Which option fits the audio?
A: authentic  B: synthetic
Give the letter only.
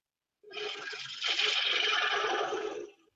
B